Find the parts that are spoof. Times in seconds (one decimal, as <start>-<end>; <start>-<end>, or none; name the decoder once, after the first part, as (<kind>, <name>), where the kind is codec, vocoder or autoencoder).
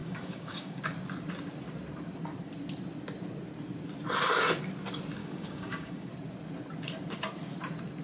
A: 0.0-0.8 (codec, DAC); 5.2-6.1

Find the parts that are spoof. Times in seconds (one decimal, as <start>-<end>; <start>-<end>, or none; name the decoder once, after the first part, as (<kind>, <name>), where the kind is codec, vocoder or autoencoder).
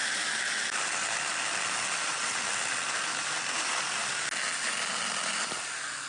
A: none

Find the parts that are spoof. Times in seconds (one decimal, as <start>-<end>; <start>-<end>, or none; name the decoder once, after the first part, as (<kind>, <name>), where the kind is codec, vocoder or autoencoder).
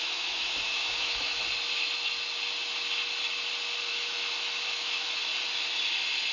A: 0.0-1.4 (autoencoder, DAC-VAE); 3.9-5.3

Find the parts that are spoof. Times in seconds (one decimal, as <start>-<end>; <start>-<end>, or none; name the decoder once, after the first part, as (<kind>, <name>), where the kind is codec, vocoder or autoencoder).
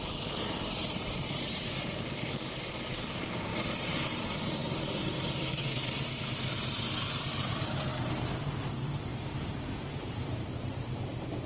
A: 0.0-11.5 (vocoder, BigVGAN v2)